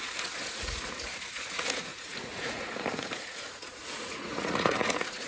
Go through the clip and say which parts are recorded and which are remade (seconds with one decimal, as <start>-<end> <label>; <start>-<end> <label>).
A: 0.0-5.3 remade